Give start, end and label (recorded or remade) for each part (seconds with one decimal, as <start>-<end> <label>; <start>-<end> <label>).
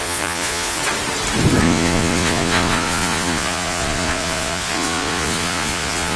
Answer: 0.0-0.8 remade; 0.8-1.6 recorded; 1.6-6.2 remade